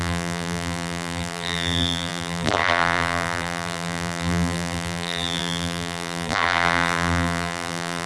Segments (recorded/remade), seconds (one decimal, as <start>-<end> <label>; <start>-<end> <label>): 0.0-8.1 remade